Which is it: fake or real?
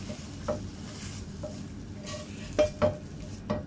real